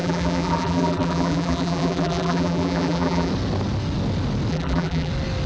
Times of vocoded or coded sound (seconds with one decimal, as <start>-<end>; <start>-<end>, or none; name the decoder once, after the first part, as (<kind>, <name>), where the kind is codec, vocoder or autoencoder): 0.0-3.3 (vocoder, BigVGAN v2); 4.5-5.1